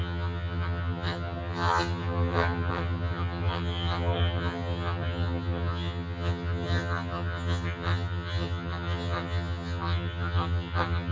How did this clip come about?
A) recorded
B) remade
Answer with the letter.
B